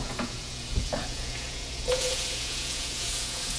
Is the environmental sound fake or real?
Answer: fake